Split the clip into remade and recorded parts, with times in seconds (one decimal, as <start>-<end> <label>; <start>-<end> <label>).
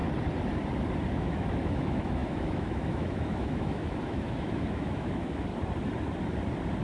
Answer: 0.0-1.1 recorded; 1.1-5.5 remade; 5.5-6.8 recorded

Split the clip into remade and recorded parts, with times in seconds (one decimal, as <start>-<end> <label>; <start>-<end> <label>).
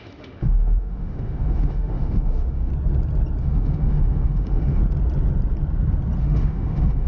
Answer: 0.0-2.7 remade; 2.7-3.4 recorded; 3.4-4.8 remade; 4.8-6.2 recorded; 6.2-7.1 remade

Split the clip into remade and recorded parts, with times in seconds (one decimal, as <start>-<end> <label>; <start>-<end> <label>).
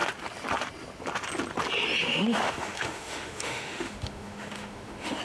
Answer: 0.0-2.0 recorded; 2.0-5.2 remade